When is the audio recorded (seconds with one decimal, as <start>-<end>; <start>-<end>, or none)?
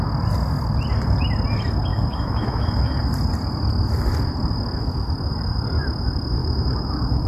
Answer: 0.0-1.9; 3.0-6.4